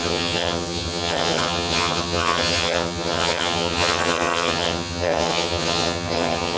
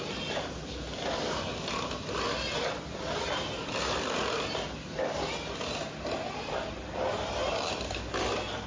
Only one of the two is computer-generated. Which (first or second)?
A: first